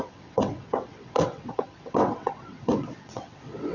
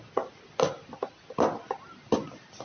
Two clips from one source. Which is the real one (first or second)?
second